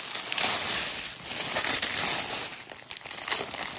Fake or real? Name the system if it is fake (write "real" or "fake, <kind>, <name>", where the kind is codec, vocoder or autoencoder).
real